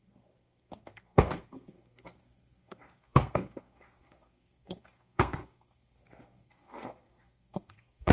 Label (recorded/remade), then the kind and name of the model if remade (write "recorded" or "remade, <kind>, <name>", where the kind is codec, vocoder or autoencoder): remade, codec, SNAC